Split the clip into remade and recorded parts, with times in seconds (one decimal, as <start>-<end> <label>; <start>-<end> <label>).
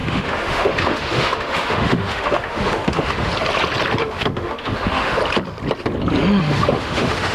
0.0-3.3 remade; 3.3-4.0 recorded; 4.0-5.2 remade; 5.2-6.4 recorded; 6.4-7.3 remade